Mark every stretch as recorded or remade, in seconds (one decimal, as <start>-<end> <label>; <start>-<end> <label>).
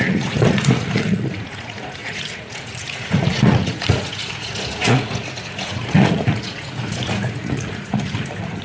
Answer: 0.0-8.6 remade